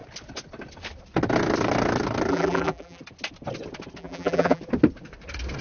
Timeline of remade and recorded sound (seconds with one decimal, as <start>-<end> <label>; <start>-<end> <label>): 0.0-2.3 recorded; 2.3-3.0 remade; 3.0-4.0 recorded; 4.0-4.6 remade; 4.6-5.6 recorded